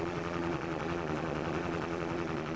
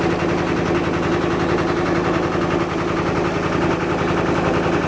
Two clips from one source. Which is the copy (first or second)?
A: first